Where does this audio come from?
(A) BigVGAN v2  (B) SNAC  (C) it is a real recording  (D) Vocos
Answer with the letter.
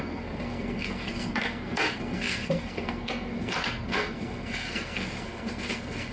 B